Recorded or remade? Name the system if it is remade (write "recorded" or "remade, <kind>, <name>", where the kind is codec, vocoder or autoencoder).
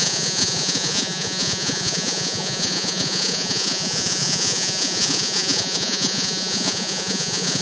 remade, vocoder, Vocos